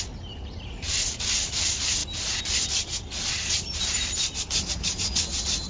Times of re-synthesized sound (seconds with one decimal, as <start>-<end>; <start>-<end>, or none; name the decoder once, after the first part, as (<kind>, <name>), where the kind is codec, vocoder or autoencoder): none